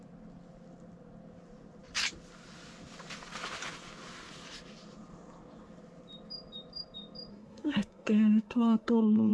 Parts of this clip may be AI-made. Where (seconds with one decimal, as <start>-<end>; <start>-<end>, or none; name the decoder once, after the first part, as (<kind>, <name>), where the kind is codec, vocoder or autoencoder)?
7.3-9.3 (codec, SNAC)